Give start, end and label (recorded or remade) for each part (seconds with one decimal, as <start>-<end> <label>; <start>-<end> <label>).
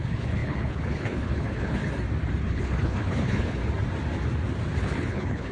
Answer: 0.0-1.8 remade; 1.8-2.4 recorded; 2.4-3.6 remade; 3.6-4.8 recorded; 4.8-5.5 remade